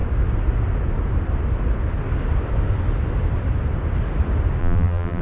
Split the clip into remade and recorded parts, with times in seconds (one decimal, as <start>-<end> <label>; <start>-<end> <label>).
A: 0.0-4.6 recorded; 4.6-5.2 remade